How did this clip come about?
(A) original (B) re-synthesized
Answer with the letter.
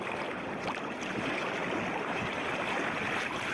A